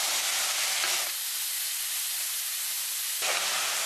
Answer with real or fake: real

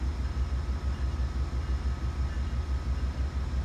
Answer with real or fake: real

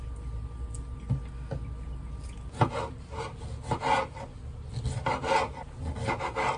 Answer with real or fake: real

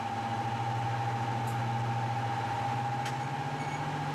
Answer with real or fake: real